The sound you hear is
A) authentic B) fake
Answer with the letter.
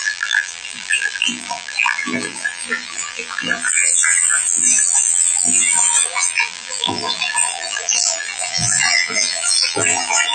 B